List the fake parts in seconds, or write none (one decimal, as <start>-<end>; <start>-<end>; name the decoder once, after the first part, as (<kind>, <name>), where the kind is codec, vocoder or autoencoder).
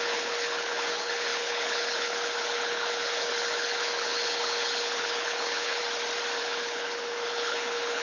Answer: 0.0-5.8 (codec, HILCodec); 6.4-8.0